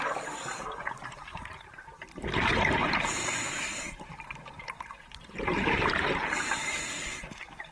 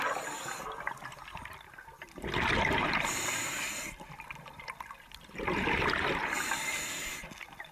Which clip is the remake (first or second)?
first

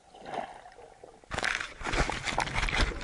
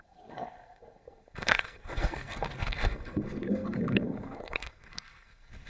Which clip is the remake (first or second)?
second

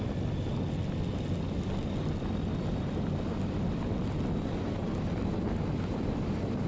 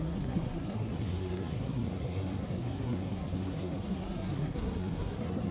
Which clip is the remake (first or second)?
second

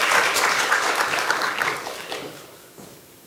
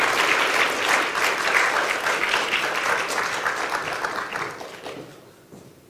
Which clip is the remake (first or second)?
first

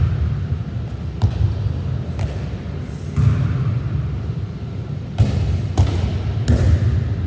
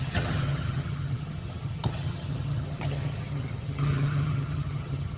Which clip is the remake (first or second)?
second